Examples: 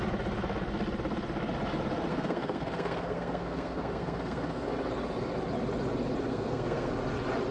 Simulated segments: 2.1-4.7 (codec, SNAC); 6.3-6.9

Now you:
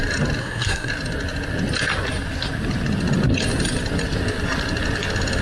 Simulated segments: 0.4-0.9 (codec, SNAC)

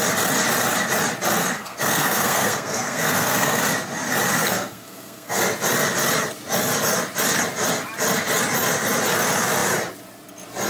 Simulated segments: 1.4-3.6 (codec, SNAC); 4.3-5.4